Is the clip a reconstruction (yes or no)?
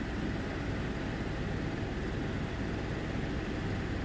no